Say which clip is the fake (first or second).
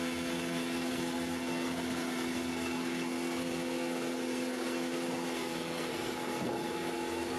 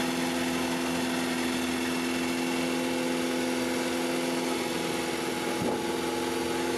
first